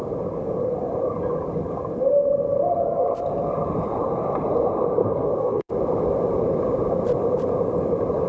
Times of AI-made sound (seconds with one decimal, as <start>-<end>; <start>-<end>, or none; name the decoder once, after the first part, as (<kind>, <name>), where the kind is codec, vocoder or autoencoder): 5.0-5.7 (codec, SNAC)